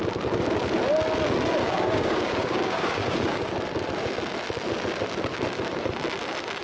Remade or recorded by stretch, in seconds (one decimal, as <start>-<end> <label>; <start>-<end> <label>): 0.0-1.6 recorded; 1.6-3.5 remade; 3.5-6.6 recorded